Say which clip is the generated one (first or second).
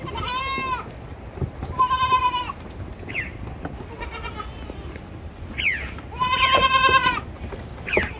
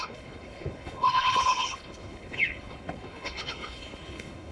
second